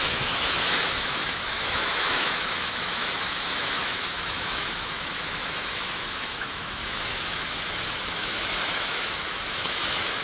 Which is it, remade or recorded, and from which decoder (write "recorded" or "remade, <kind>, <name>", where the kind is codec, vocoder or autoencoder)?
remade, autoencoder, DAC-VAE